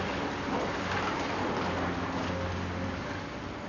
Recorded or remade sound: recorded